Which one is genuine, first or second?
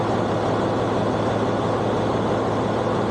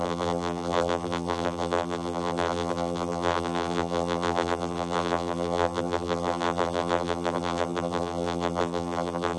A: first